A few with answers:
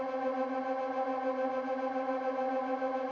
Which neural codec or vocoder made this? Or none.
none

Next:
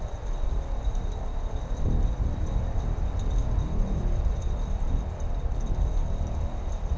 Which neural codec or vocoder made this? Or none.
vocoder, BigVGAN v2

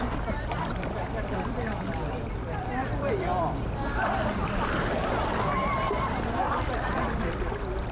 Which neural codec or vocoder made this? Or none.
vocoder, BigVGAN v2